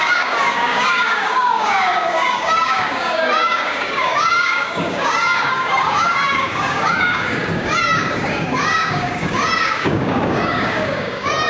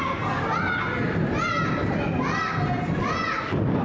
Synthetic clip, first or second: first